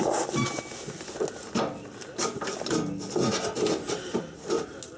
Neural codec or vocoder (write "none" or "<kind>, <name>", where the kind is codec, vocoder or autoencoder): none